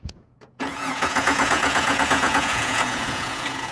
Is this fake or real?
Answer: fake